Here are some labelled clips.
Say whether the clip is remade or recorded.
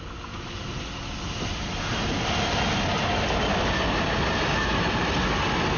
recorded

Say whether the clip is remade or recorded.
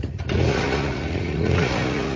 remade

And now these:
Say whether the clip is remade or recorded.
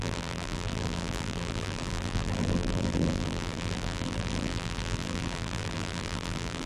remade